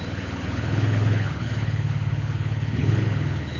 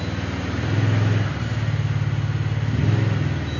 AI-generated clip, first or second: first